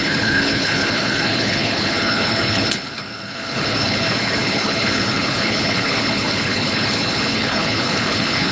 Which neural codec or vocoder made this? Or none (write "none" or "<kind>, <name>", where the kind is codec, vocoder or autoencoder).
codec, HILCodec